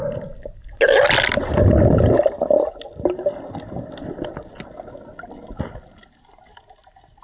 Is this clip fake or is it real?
real